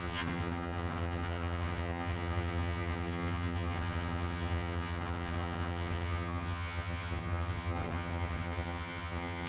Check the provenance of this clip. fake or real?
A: fake